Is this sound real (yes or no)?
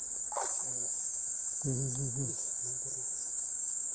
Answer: no